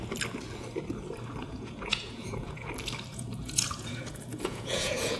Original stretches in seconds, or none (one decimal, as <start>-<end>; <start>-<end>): 0.0-1.4; 2.7-3.1